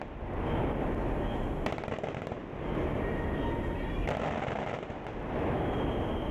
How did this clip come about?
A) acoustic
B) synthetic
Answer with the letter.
A